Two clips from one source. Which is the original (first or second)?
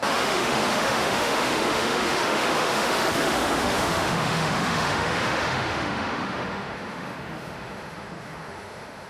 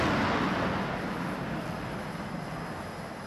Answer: second